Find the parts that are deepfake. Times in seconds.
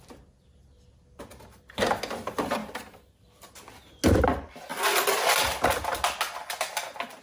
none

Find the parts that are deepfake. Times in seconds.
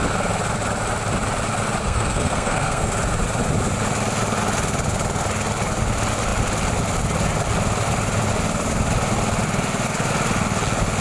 1.8-2.9 (codec, SNAC)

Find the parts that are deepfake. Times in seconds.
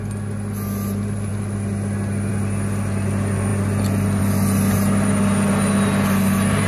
none